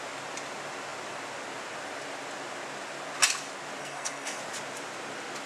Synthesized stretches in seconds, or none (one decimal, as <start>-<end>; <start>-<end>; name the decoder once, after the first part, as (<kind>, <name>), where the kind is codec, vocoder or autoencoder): 3.8-4.4 (codec, SNAC)